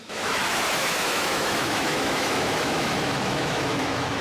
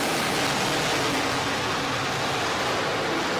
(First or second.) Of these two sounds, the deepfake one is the first